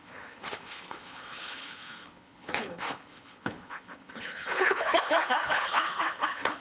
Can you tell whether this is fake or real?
fake